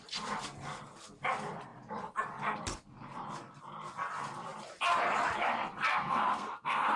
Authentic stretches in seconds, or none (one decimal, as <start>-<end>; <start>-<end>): 0.0-5.9